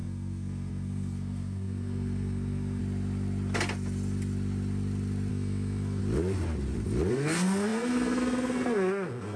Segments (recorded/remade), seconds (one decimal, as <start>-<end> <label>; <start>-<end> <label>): 0.0-2.8 remade; 2.8-5.3 recorded; 5.3-6.0 remade; 6.0-7.1 recorded; 7.1-9.4 remade